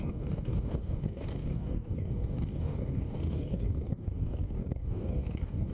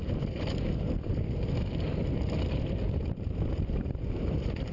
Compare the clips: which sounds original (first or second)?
second